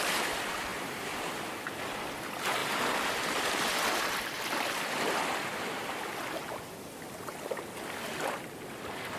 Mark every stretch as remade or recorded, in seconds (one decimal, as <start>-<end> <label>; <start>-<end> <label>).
0.0-2.6 recorded; 2.6-3.4 remade; 3.4-9.2 recorded